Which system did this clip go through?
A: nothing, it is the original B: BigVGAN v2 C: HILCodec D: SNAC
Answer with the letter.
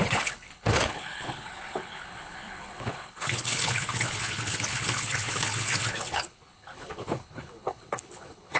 C